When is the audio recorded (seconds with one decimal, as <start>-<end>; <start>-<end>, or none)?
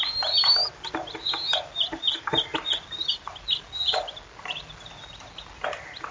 0.0-6.1